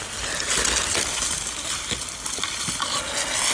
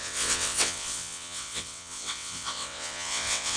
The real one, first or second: first